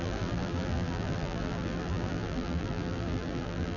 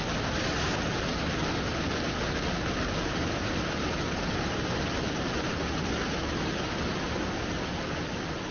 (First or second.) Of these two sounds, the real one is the second